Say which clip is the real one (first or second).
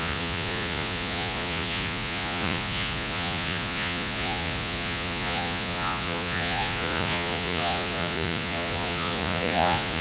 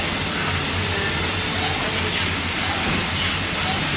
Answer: second